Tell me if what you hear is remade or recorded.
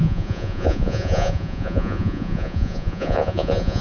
remade